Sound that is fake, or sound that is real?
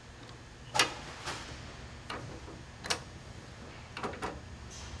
real